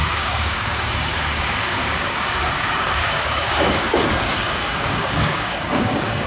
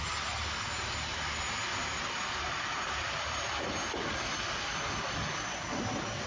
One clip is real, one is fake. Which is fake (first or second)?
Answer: first